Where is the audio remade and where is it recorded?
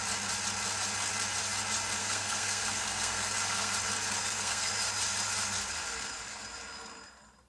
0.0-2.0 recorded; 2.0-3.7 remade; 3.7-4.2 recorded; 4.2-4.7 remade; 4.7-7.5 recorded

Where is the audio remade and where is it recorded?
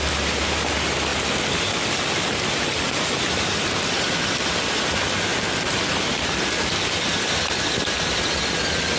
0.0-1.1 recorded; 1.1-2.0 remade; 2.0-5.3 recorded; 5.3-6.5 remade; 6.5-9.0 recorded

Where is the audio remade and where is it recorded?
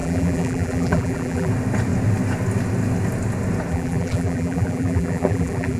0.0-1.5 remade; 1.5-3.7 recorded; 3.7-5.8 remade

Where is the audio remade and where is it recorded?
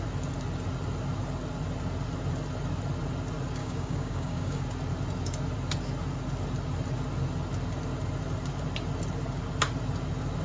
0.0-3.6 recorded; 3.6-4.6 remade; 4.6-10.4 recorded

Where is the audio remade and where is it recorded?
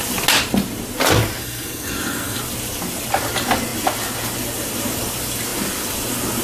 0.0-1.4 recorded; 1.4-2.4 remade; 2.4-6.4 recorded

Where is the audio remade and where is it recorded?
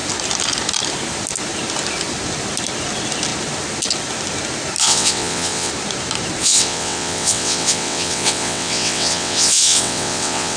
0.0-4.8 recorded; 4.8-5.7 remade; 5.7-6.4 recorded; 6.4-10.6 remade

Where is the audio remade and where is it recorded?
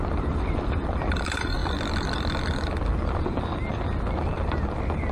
0.0-1.6 remade; 1.6-5.1 recorded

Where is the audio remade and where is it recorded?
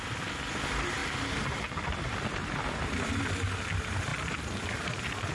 0.0-5.3 recorded